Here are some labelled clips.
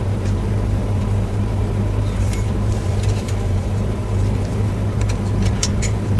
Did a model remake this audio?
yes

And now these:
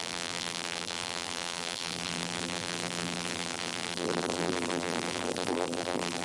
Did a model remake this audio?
yes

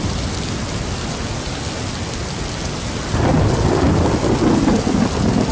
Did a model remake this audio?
no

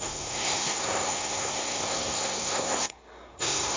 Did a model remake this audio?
yes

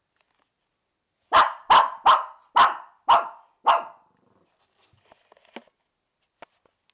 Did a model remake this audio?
no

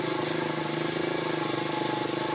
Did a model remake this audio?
no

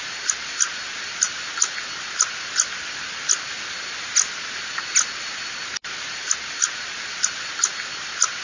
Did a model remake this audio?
no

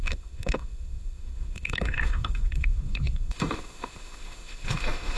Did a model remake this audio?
yes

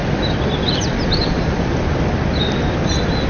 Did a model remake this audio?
no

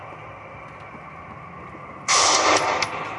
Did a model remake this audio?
no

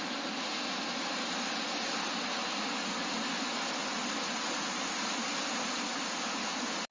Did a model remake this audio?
no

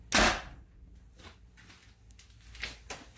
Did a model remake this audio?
no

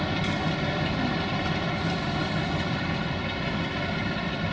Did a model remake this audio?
no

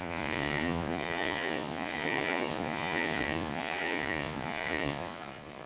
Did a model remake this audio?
yes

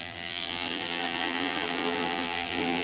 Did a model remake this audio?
yes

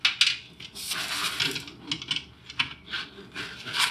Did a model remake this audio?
no